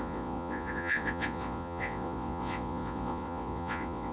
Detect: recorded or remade remade